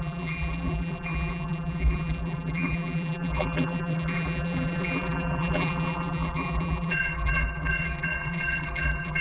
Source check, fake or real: fake